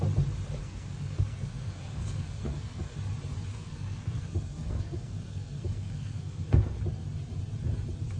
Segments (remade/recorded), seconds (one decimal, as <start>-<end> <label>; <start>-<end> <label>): 0.0-0.6 recorded; 0.6-3.0 remade; 3.0-3.5 recorded; 3.5-6.8 remade; 6.8-8.2 recorded